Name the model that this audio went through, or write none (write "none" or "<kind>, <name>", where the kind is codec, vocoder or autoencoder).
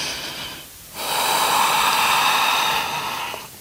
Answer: none